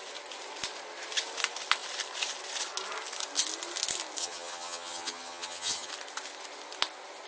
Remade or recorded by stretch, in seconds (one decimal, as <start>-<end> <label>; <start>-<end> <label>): 0.0-4.2 recorded; 4.2-5.9 remade; 5.9-7.3 recorded